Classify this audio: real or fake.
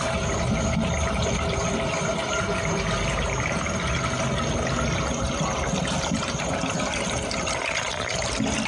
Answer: real